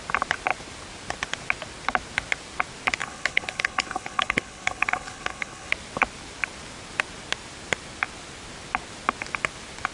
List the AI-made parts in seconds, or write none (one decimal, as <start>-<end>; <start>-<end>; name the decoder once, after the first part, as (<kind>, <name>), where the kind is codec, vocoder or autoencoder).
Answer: 3.0-5.7 (codec, HILCodec)